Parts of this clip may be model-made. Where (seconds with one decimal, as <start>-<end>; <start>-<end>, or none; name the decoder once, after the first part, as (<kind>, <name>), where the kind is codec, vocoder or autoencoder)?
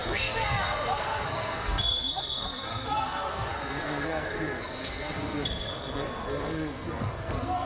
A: 0.0-7.7 (codec, SNAC)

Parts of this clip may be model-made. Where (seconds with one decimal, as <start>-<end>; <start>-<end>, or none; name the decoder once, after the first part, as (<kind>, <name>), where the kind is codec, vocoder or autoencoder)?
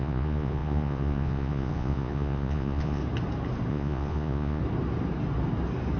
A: 0.0-3.0 (vocoder, Vocos); 3.7-4.6